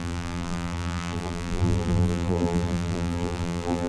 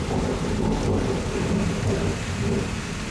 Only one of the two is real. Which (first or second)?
second